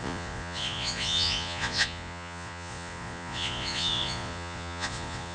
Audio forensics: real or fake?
fake